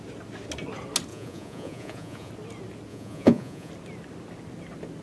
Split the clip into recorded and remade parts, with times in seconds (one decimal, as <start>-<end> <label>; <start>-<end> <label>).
0.0-1.1 recorded; 1.1-2.3 remade; 2.3-2.9 recorded; 2.9-3.7 remade; 3.7-5.0 recorded